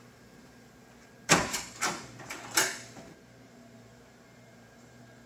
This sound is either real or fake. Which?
fake